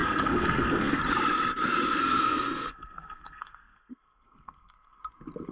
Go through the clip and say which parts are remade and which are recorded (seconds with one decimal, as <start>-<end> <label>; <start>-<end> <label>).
0.0-1.0 remade; 1.0-2.0 recorded; 2.0-5.0 remade; 5.0-5.5 recorded